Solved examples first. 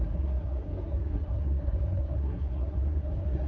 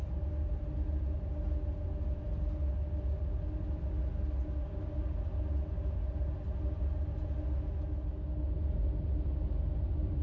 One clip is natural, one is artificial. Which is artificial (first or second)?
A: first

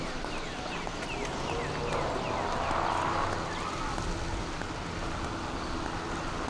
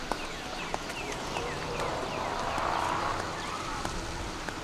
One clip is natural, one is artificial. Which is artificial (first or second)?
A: second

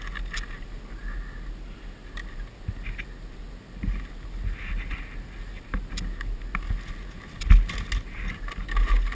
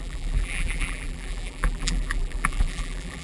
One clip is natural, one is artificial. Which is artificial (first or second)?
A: second